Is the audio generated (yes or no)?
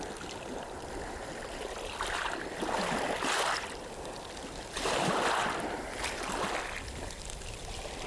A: no